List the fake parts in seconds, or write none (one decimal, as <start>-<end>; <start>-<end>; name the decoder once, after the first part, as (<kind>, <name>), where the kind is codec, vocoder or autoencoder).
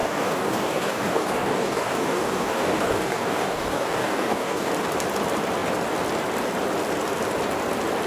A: 0.0-4.7 (codec, DAC)